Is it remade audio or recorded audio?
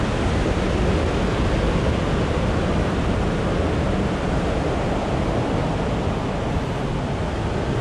recorded